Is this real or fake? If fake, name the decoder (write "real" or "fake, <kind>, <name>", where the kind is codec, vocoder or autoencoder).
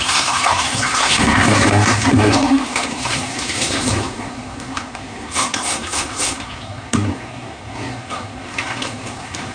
fake, codec, SNAC